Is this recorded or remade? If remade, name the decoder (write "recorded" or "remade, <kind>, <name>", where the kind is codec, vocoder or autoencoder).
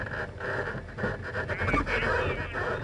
recorded